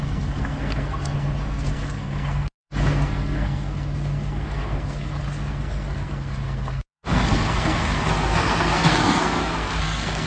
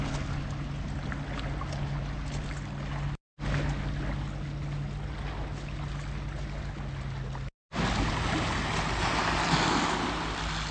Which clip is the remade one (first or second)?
first